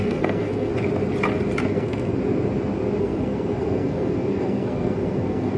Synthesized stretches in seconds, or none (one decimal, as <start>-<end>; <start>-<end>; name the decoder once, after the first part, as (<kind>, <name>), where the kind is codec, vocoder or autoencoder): 0.0-0.7 (codec, SNAC); 1.7-2.2; 3.0-5.6